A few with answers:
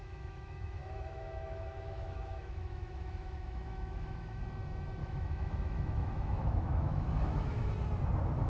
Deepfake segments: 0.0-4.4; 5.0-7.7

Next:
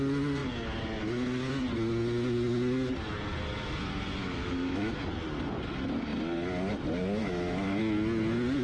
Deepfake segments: 4.2-4.9; 7.2-7.8

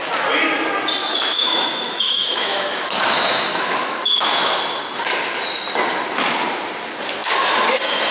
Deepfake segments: 1.0-4.6

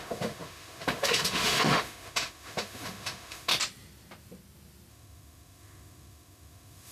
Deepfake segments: 0.0-3.5; 4.9-6.9

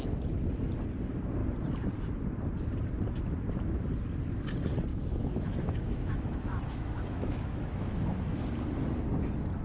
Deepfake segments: 4.9-8.4